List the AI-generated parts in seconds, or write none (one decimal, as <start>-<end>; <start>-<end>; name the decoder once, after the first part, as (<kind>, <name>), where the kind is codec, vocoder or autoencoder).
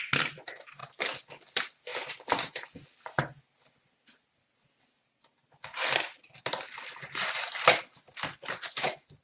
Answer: 0.0-1.9 (vocoder, BigVGAN v2); 4.3-5.4; 7.0-9.2